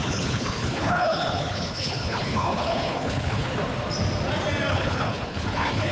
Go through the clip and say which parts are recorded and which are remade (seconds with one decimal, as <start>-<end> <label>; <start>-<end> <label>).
0.0-3.5 remade; 3.5-4.7 recorded; 4.7-5.9 remade